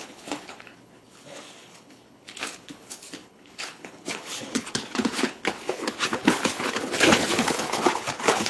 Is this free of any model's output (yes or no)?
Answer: no